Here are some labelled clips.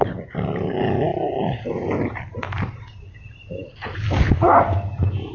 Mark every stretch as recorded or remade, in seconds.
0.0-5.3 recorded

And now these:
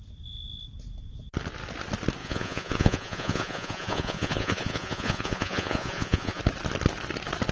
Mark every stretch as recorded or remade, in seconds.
0.0-2.2 recorded; 2.2-6.4 remade; 6.4-7.5 recorded

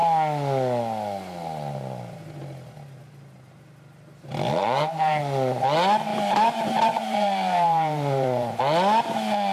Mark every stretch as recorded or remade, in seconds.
0.0-4.6 recorded; 4.6-5.2 remade; 5.2-6.1 recorded; 6.1-8.6 remade; 8.6-9.5 recorded

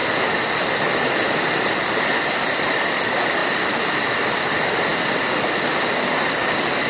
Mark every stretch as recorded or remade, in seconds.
0.0-6.9 recorded

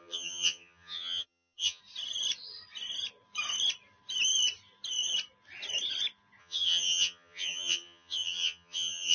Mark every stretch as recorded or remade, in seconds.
0.0-1.8 remade; 1.8-6.4 recorded; 6.4-9.1 remade